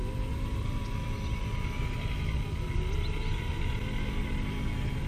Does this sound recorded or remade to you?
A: recorded